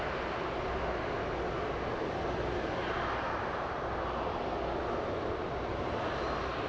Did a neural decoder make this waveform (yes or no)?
no